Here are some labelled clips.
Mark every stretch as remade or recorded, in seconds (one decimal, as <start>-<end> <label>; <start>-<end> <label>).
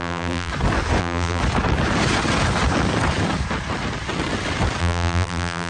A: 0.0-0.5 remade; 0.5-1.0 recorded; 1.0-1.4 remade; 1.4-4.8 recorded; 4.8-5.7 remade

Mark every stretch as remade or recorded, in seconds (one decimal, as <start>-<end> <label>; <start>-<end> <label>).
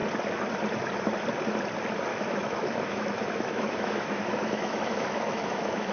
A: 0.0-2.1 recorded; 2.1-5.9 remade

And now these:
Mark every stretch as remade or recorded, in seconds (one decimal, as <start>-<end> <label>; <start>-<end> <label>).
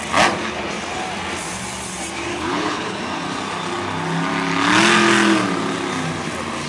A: 0.0-2.3 recorded; 2.3-3.0 remade; 3.0-6.7 recorded